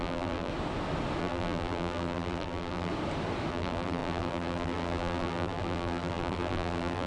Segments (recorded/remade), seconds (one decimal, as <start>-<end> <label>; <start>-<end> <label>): 0.0-0.5 remade; 0.5-1.2 recorded; 1.2-2.9 remade; 2.9-3.5 recorded; 3.5-7.1 remade